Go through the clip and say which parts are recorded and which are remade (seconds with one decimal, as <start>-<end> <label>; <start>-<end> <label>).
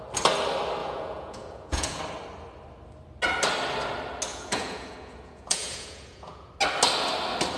0.0-0.8 recorded; 0.8-2.0 remade; 2.0-4.3 recorded; 4.3-6.5 remade; 6.5-7.6 recorded